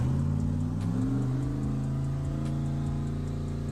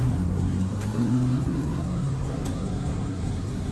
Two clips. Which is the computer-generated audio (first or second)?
second